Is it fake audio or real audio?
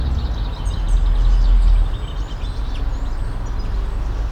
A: real